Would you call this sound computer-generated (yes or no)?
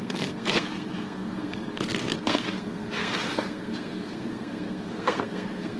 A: yes